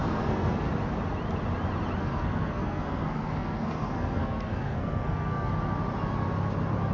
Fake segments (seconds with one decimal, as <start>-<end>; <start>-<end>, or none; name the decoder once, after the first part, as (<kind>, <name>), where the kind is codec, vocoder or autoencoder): 0.0-0.7 (codec, SNAC); 2.0-5.5